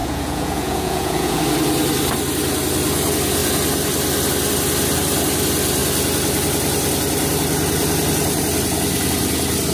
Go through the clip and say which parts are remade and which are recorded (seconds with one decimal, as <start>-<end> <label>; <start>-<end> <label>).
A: 0.0-1.4 remade; 1.4-9.7 recorded